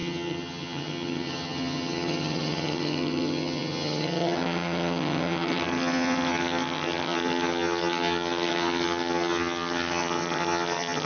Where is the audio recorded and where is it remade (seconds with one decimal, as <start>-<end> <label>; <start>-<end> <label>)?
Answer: 0.0-11.1 remade